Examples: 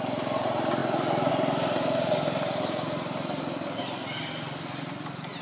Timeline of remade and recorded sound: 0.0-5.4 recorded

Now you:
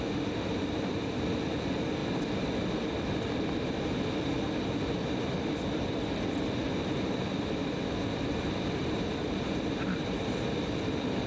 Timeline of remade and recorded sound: 0.0-11.3 recorded

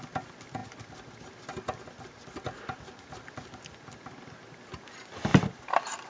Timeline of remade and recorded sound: 0.0-6.1 recorded